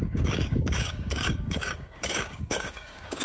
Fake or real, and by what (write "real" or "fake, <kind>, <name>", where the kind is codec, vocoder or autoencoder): fake, codec, DAC